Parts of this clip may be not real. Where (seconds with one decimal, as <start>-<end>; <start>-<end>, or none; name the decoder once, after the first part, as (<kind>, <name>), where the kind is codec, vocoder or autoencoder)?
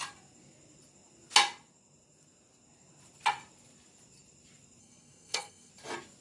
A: 4.8-5.7 (codec, SNAC)